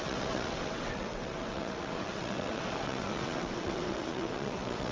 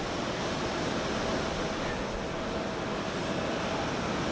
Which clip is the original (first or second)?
second